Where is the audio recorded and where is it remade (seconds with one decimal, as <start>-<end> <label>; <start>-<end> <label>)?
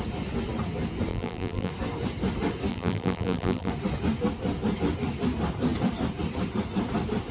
0.0-1.1 recorded; 1.1-1.7 remade; 1.7-2.7 recorded; 2.7-3.7 remade; 3.7-7.3 recorded